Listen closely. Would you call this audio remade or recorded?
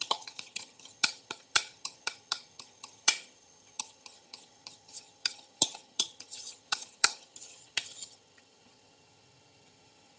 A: remade